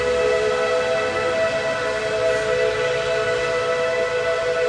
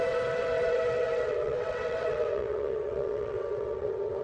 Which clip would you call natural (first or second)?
first